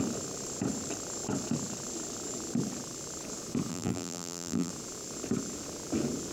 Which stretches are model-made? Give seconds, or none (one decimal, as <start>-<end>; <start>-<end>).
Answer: 3.7-4.7

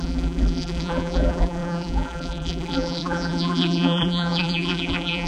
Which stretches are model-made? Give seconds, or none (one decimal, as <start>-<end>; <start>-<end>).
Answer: 0.0-5.3

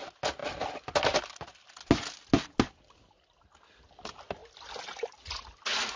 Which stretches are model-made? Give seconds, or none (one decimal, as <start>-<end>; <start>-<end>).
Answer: none

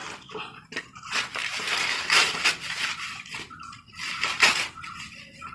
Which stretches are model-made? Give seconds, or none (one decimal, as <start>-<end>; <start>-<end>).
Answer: 0.7-5.5

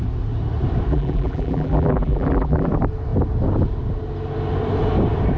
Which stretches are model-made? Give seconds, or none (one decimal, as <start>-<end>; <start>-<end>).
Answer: 0.9-2.7

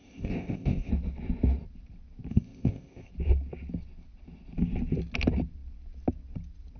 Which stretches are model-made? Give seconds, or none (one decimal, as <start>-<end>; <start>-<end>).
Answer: 0.0-0.9; 2.3-3.1

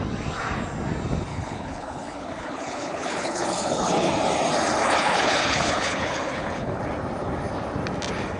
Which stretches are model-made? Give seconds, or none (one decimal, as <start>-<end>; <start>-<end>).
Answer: 1.3-4.1; 4.8-6.8